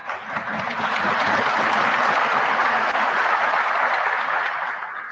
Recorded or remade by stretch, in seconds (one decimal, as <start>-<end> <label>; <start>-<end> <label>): 0.0-2.6 recorded; 2.6-3.5 remade; 3.5-5.1 recorded